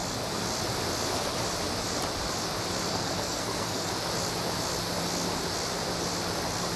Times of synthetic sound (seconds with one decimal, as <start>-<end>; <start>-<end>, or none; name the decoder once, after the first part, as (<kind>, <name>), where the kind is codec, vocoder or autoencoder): 2.9-3.9 (codec, SNAC)